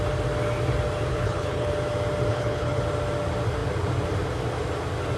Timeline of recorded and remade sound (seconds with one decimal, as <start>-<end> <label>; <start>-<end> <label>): 0.0-1.1 recorded; 1.1-1.7 remade; 1.7-2.3 recorded; 2.3-2.8 remade; 2.8-5.2 recorded